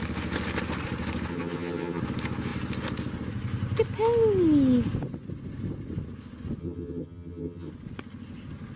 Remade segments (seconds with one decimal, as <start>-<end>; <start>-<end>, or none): 1.3-2.0; 6.6-7.7